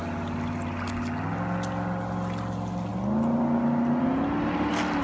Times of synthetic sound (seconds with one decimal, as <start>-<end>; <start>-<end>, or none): none

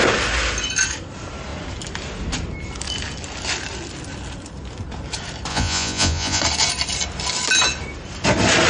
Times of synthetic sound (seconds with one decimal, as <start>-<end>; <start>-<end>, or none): 5.5-6.4

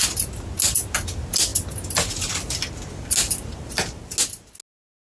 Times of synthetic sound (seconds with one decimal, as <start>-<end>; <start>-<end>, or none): none

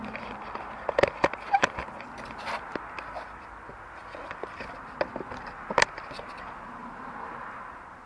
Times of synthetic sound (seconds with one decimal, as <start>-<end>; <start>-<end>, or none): none

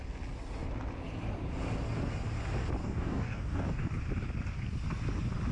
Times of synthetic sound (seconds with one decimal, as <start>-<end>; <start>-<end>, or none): 2.8-4.0